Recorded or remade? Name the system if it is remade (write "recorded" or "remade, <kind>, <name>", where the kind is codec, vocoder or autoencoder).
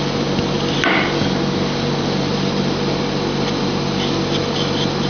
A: recorded